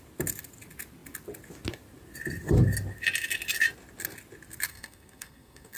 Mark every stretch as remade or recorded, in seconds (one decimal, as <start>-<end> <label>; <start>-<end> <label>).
0.0-4.7 recorded; 4.7-5.8 remade